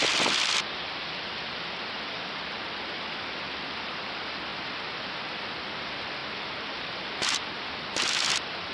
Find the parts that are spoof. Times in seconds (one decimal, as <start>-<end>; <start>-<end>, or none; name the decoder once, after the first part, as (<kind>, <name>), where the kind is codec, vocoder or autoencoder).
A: 0.0-4.5 (vocoder, BigVGAN v2); 5.8-6.2